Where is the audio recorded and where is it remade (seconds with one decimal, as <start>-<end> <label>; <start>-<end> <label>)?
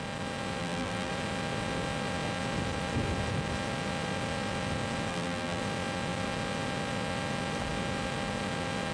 0.0-0.6 recorded; 0.6-1.1 remade; 1.1-5.1 recorded; 5.1-5.6 remade; 5.6-8.9 recorded